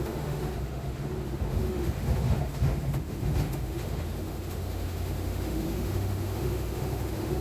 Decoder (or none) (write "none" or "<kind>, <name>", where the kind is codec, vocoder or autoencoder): autoencoder, DAC-VAE